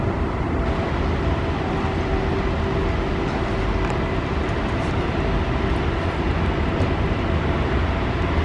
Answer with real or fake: real